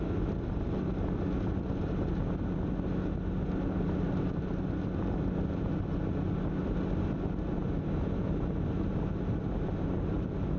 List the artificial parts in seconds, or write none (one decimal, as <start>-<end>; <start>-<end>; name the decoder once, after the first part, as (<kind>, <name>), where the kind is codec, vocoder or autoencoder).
none

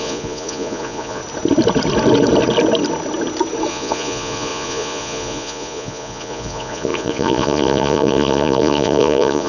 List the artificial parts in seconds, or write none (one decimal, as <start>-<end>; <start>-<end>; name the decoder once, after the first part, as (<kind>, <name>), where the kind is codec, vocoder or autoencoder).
0.0-1.2 (vocoder, Vocos); 3.7-9.5

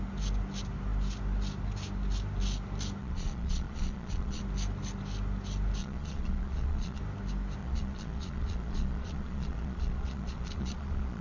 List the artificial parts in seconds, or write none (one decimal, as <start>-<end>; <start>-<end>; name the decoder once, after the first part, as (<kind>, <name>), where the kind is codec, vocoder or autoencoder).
3.0-4.4 (vocoder, Vocos); 5.8-7.0; 7.6-11.2

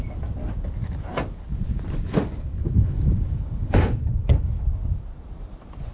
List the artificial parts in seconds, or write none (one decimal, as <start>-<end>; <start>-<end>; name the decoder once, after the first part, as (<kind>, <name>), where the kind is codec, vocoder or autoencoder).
2.6-4.5 (codec, DAC)

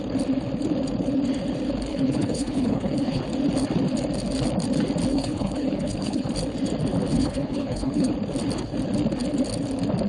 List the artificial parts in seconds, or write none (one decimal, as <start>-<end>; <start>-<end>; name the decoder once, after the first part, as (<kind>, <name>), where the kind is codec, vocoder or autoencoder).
1.9-3.2 (codec, HILCodec); 5.1-6.3; 7.1-8.1